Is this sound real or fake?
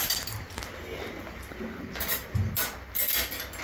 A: real